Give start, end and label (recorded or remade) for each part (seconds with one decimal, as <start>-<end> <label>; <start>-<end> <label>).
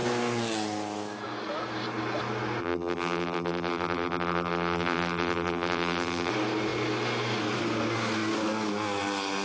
0.0-2.6 recorded; 2.6-6.3 remade; 6.3-9.4 recorded